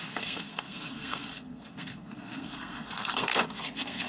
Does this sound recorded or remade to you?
remade